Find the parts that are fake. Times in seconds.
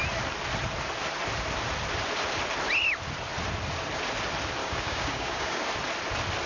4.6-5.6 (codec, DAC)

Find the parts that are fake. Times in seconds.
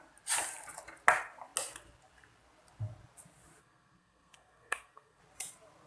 3.6-5.2 (codec, SNAC)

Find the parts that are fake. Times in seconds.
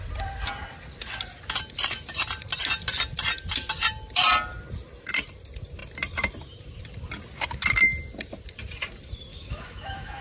9.3-10.2 (autoencoder, DAC-VAE)